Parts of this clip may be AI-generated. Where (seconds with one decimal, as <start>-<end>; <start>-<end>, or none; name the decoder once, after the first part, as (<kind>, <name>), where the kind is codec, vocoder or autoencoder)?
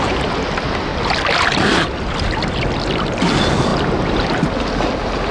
none